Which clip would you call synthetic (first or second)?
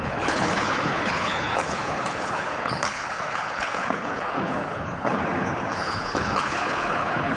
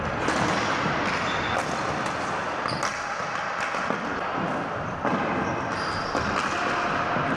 first